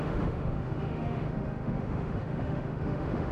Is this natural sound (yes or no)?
no